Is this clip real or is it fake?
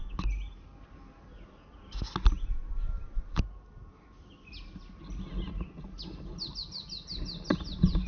real